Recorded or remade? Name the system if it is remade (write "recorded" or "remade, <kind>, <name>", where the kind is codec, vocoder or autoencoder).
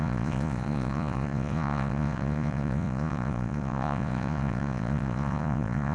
remade, vocoder, Vocos